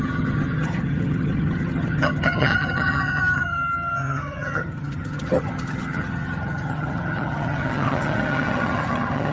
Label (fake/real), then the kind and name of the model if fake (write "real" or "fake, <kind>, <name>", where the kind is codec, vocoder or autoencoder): fake, vocoder, HiFi-GAN